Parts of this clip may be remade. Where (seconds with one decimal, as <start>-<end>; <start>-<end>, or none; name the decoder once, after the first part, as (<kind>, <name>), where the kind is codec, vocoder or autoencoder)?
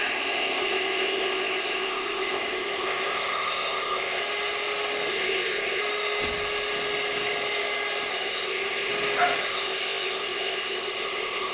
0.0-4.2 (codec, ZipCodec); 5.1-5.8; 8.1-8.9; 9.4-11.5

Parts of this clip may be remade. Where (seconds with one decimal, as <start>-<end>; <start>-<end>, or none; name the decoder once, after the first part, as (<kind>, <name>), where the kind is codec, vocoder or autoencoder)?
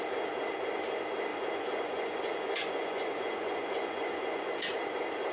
1.3-4.5 (vocoder, Vocos)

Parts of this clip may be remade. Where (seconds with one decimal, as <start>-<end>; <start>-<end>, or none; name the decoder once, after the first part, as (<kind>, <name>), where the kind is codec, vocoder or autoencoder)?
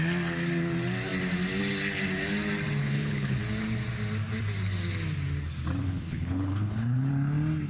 2.8-3.4 (codec, HILCodec); 5.8-7.1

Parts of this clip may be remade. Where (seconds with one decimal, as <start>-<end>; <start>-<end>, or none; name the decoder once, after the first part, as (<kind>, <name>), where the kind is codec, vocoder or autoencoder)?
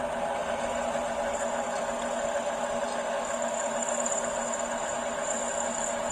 none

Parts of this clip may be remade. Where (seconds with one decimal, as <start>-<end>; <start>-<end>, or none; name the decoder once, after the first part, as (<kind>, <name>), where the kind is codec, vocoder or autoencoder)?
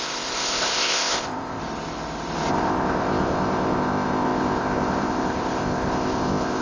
0.0-1.6 (codec, ZipCodec); 2.5-6.6